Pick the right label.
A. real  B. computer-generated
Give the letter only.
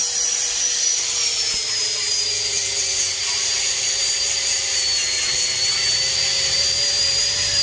B